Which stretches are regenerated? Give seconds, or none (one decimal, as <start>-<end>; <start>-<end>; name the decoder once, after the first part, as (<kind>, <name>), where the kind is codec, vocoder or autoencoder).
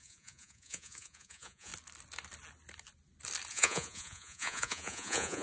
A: 0.0-1.7 (vocoder, Vocos); 3.5-5.4